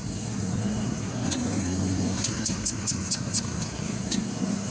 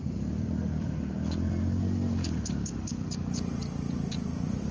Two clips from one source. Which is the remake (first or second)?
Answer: first